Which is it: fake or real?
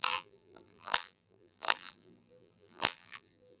fake